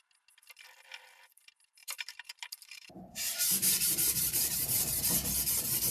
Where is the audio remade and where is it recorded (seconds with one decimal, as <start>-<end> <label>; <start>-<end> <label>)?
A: 0.0-1.8 recorded; 1.8-5.1 remade; 5.1-5.9 recorded